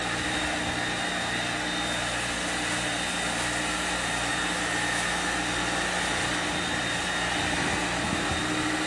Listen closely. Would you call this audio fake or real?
real